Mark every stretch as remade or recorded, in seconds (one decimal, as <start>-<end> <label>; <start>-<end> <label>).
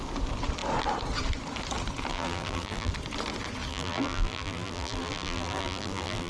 0.0-2.1 recorded; 2.1-2.9 remade; 2.9-3.7 recorded; 3.7-6.3 remade